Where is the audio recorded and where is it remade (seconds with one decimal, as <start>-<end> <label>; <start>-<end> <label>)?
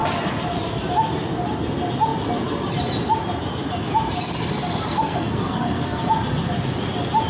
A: 0.0-4.9 recorded; 4.9-6.1 remade; 6.1-7.3 recorded